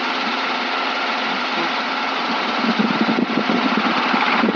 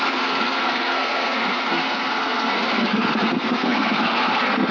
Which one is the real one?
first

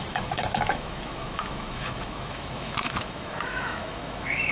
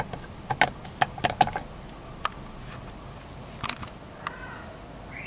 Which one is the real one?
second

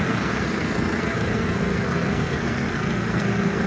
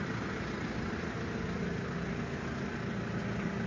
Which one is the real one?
second